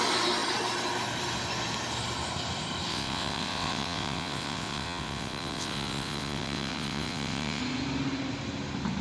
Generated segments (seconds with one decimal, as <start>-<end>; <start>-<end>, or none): 2.9-7.6